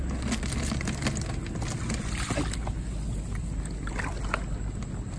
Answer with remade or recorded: recorded